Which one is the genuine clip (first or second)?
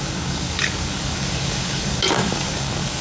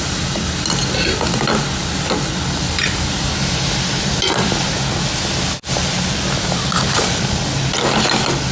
second